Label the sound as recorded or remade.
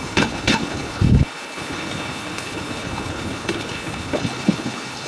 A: remade